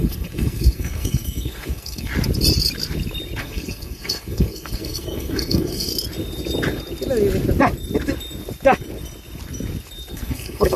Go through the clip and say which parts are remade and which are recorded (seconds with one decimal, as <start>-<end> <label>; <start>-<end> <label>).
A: 0.0-2.1 remade; 2.1-3.4 recorded; 3.4-5.9 remade; 5.9-10.1 recorded; 10.1-10.8 remade